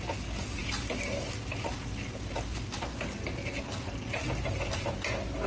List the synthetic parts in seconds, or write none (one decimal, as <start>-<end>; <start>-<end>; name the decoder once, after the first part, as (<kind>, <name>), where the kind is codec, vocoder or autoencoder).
none